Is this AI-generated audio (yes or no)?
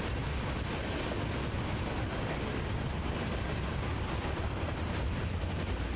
no